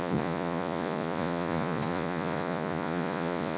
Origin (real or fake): fake